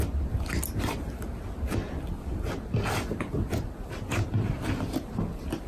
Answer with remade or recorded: recorded